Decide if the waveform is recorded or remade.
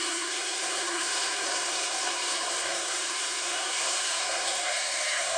remade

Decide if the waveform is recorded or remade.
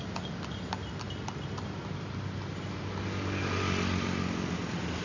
recorded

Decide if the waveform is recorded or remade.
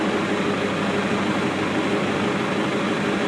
recorded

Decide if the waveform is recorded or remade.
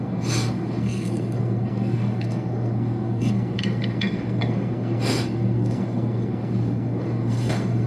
remade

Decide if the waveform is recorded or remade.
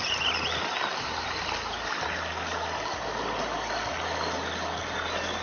recorded